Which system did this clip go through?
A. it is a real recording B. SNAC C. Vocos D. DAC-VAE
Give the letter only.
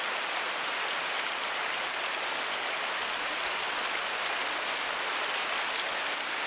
A